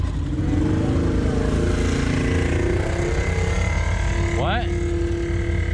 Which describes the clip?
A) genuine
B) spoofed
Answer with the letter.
A